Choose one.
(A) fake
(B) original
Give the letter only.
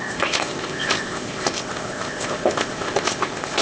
A